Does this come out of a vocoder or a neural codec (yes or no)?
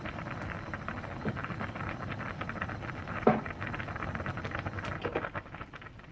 no